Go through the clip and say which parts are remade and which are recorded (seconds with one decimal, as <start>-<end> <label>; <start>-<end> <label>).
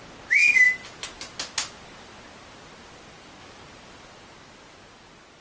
0.0-5.4 recorded